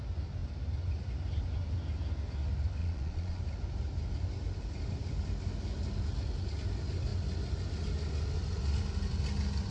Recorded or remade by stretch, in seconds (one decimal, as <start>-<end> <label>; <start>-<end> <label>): 0.0-2.8 recorded; 2.8-3.4 remade; 3.4-9.7 recorded